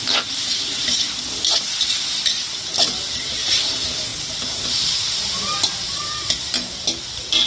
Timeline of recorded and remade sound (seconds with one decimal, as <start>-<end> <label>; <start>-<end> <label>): 0.0-7.5 recorded